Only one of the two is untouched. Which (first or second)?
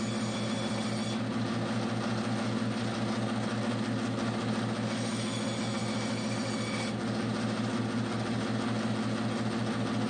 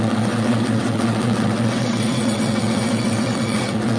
first